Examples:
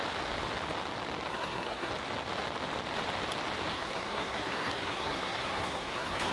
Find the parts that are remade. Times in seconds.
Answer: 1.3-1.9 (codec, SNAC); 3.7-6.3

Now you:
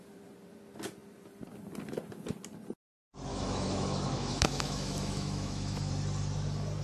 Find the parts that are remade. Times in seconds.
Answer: 3.3-5.9 (autoencoder, DAC-VAE)